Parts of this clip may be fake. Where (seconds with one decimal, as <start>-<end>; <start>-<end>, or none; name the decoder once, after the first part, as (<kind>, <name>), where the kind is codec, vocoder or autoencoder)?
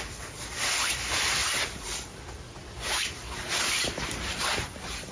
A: none